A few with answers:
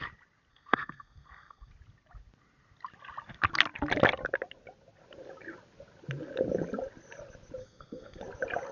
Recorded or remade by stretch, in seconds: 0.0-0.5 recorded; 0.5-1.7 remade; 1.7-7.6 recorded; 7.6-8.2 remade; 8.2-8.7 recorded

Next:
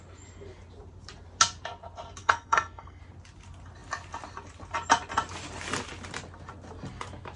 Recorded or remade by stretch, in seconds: 0.0-2.2 recorded; 2.2-3.0 remade; 3.0-7.4 recorded

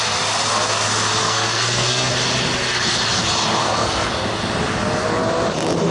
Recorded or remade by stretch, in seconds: 0.0-1.2 recorded; 1.2-2.1 remade; 2.1-3.6 recorded; 3.6-4.1 remade; 4.1-5.9 recorded

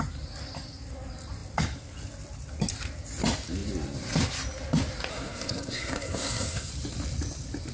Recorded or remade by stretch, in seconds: 0.0-5.1 recorded; 5.1-6.7 remade; 6.7-7.7 recorded

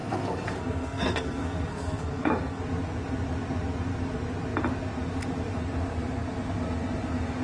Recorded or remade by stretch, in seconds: 0.0-2.6 remade; 2.6-7.4 recorded

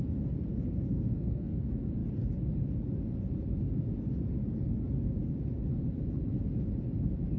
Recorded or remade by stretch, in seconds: 0.0-0.5 recorded; 0.5-1.6 remade; 1.6-7.4 recorded

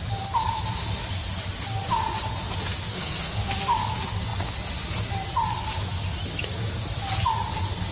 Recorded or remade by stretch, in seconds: 0.0-2.9 recorded; 2.9-3.5 remade; 3.5-7.9 recorded

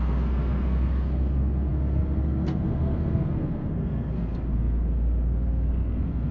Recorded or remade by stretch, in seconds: 0.0-6.3 remade